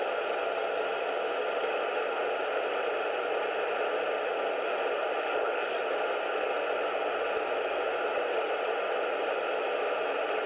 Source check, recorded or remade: recorded